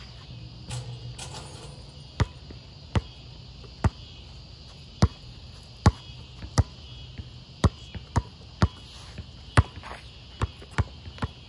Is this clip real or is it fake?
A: real